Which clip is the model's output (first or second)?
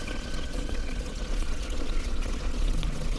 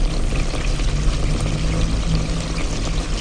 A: first